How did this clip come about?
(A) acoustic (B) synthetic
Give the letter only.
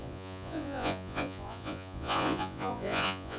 B